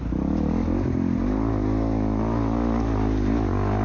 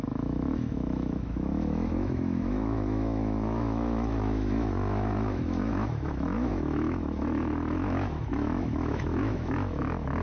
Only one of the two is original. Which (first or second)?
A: first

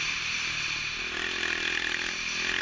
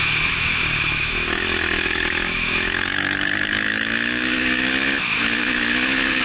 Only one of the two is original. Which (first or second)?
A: first